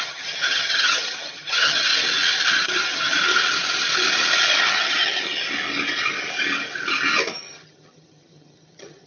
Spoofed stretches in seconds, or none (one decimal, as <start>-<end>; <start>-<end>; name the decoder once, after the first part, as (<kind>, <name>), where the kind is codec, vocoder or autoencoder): 0.0-1.9 (vocoder, HiFi-GAN); 2.5-3.3; 4.6-5.4; 7.4-9.1